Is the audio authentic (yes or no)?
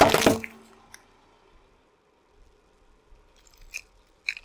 yes